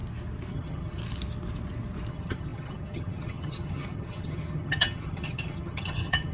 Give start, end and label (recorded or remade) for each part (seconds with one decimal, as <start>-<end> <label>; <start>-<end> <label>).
0.0-0.5 recorded; 0.5-1.0 remade; 1.0-2.1 recorded; 2.1-6.3 remade